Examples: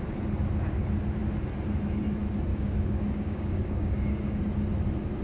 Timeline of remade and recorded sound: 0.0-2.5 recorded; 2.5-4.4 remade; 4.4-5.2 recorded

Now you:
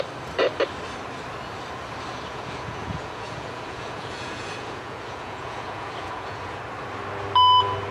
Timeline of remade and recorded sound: 0.0-2.1 recorded; 2.1-6.6 remade; 6.6-7.9 recorded